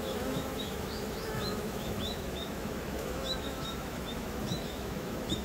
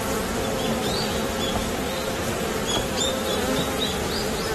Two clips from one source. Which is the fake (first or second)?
first